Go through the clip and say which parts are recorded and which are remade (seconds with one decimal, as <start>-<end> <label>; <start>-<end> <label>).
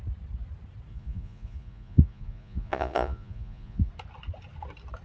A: 0.0-0.9 recorded; 0.9-3.9 remade; 3.9-5.0 recorded